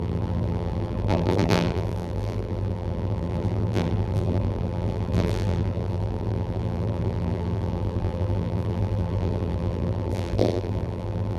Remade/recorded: remade